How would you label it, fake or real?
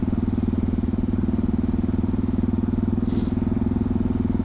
real